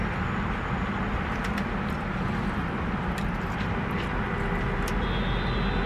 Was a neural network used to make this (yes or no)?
no